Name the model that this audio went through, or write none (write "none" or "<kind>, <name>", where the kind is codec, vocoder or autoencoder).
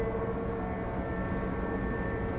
none